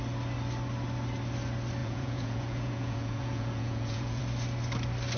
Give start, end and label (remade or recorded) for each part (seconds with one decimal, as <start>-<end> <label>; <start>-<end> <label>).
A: 0.0-1.8 recorded; 1.8-4.2 remade; 4.2-5.2 recorded

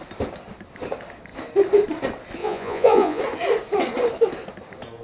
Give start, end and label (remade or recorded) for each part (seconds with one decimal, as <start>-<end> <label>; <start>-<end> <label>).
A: 0.0-2.4 recorded; 2.4-3.2 remade; 3.2-5.0 recorded

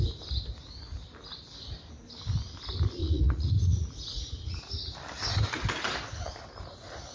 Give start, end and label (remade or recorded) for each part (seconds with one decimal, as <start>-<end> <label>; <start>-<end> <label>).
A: 0.0-3.0 recorded; 3.0-4.7 remade; 4.7-7.1 recorded

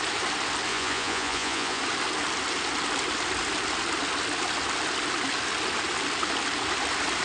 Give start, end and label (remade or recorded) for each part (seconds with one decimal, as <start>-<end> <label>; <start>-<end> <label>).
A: 0.0-0.7 recorded; 0.7-1.8 remade; 1.8-7.2 recorded

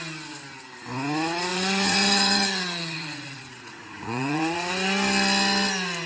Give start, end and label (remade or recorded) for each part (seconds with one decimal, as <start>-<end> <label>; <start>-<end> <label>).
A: 0.0-1.5 recorded; 1.5-4.7 remade; 4.7-6.1 recorded

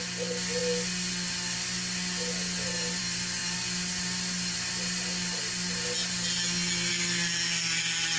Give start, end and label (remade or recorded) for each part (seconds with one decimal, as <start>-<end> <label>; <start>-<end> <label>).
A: 0.0-8.2 recorded

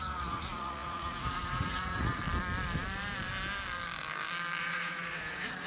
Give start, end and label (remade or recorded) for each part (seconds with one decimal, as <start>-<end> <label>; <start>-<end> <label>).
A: 0.0-2.2 remade; 2.2-4.6 recorded; 4.6-5.7 remade

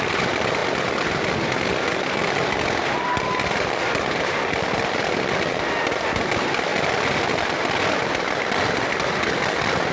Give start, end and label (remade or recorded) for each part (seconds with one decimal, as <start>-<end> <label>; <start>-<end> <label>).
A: 0.0-9.9 recorded